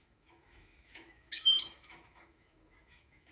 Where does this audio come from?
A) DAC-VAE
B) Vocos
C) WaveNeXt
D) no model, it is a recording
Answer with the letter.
A